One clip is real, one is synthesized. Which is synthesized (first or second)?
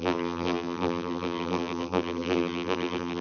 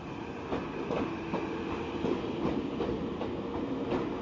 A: first